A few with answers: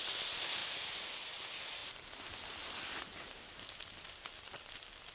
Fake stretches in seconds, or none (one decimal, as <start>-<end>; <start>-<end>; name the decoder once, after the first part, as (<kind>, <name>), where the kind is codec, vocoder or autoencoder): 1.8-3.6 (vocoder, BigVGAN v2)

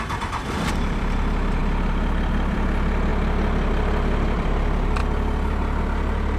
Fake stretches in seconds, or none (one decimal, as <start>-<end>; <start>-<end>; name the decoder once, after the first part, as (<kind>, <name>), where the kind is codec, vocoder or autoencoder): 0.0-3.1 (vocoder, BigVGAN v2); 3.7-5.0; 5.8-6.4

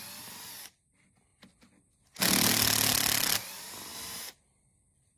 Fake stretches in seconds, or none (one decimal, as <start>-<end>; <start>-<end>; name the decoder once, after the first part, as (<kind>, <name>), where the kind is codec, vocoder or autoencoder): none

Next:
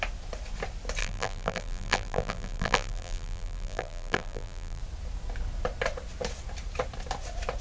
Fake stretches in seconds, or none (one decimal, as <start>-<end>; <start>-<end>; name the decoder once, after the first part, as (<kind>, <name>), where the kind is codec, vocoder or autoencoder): 1.0-4.8 (vocoder, BigVGAN v2)